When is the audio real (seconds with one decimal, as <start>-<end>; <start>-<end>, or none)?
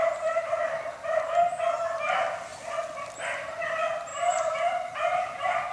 0.8-4.1